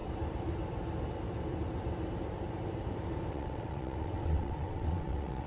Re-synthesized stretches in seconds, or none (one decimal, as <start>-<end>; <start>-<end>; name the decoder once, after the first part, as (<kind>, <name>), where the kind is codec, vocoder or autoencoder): 3.3-5.5 (vocoder, WaveNeXt)